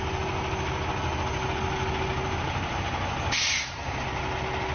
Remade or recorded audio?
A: recorded